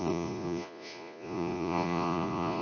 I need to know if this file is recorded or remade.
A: remade